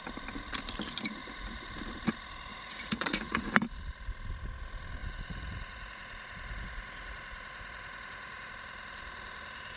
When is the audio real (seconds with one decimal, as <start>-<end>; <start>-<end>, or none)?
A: 0.0-1.2; 1.7-2.5; 3.5-5.0; 8.5-9.8